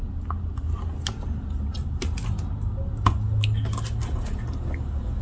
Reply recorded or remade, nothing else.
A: recorded